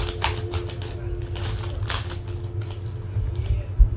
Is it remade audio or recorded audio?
recorded